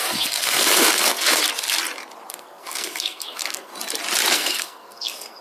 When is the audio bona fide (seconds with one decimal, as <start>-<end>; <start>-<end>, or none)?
1.4-2.3; 3.7-4.3